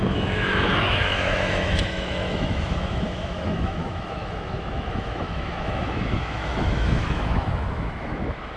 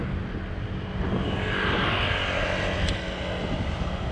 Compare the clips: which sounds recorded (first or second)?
second